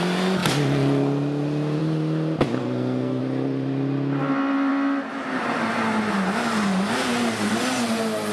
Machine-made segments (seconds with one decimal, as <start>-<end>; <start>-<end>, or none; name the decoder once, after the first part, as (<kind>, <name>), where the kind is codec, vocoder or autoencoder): 2.6-3.2 (codec, SNAC)